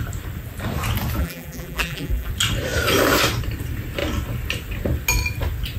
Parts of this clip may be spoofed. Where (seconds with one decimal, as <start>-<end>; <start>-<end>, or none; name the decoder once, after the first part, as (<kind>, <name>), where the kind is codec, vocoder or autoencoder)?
1.2-2.3 (vocoder, BigVGAN v2)